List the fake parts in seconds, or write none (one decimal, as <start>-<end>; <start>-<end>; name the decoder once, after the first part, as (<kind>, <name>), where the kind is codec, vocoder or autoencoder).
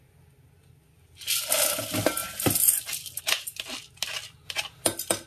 none